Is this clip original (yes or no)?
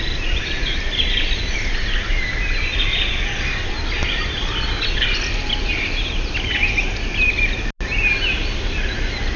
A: yes